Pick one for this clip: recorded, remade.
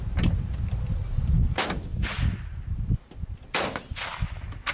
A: recorded